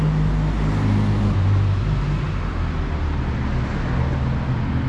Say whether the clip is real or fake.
real